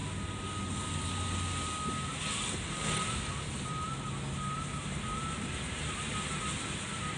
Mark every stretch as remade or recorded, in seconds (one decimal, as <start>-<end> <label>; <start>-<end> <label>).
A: 0.0-7.2 recorded